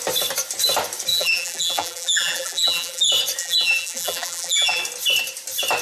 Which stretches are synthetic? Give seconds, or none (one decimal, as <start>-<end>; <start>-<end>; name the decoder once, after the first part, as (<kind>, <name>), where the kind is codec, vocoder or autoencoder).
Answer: 1.1-3.0 (vocoder, BigVGAN v2); 3.4-4.8